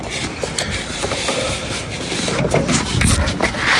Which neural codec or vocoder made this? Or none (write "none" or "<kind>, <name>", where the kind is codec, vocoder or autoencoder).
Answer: none